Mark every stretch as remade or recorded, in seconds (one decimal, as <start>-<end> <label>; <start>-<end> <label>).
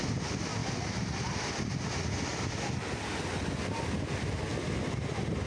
0.0-0.6 recorded; 0.6-1.7 remade; 1.7-2.3 recorded; 2.3-3.3 remade; 3.3-5.5 recorded